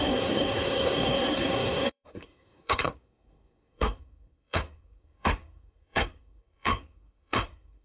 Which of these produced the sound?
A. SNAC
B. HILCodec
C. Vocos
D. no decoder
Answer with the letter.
A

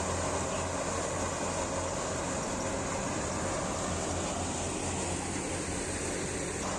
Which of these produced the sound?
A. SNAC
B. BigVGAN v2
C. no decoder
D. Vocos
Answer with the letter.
C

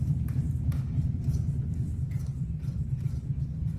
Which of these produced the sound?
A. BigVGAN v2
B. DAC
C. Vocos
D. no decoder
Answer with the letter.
A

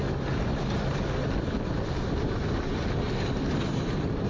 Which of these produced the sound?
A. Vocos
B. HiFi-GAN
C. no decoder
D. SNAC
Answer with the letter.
C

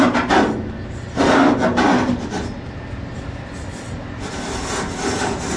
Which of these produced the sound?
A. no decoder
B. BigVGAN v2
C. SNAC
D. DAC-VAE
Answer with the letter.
A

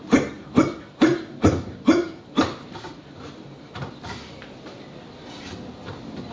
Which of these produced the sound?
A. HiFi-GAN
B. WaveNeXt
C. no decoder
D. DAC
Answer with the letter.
C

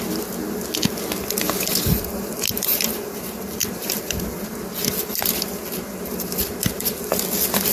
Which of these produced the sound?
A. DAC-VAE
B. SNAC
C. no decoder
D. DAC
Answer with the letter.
C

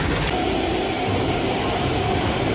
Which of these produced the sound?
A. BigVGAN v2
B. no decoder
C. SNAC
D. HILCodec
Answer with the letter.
B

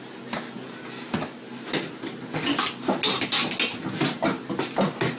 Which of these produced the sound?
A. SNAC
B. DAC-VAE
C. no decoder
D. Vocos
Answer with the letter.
C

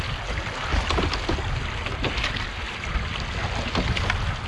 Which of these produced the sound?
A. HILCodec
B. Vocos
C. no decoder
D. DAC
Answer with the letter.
C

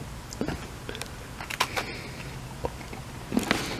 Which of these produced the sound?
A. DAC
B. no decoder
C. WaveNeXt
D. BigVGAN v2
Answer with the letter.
B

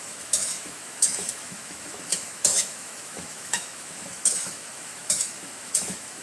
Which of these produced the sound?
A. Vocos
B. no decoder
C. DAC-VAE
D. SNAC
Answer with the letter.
C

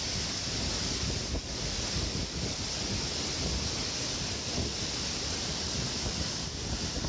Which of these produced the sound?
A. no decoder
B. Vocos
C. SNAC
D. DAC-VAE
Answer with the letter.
A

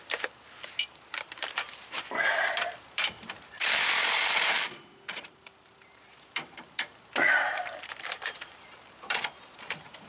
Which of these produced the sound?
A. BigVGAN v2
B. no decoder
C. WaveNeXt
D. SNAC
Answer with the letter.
A